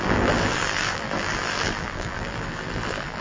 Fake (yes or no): yes